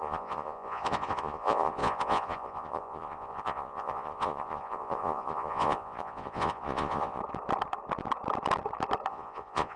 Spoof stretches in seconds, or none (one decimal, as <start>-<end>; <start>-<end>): 0.0-7.2; 9.1-9.8

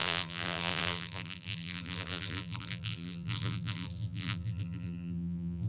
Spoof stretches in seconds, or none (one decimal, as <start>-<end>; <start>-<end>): 0.0-5.7

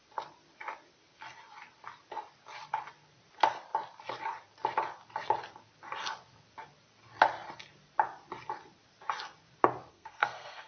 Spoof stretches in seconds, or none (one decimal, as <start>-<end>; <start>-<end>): 9.9-10.7

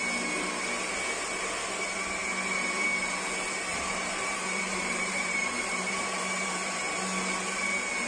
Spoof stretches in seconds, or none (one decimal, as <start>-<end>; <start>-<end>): 3.7-6.9